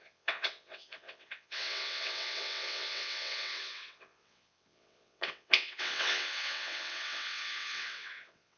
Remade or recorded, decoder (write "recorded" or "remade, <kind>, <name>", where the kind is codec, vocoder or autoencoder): remade, vocoder, WaveNeXt